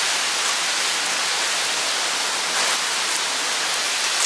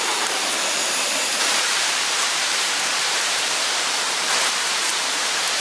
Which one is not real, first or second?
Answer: second